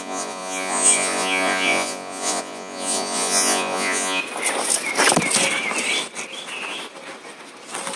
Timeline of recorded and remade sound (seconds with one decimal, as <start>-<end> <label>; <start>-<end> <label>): 0.0-4.2 remade; 4.2-8.0 recorded